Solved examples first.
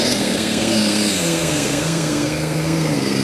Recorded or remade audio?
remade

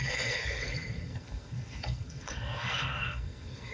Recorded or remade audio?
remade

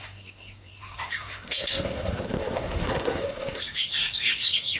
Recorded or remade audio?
remade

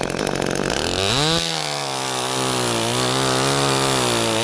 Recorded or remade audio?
recorded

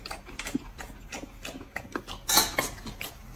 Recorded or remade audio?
recorded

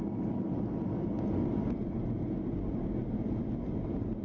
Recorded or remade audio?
recorded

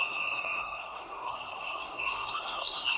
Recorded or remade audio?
remade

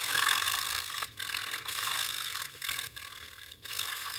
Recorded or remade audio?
remade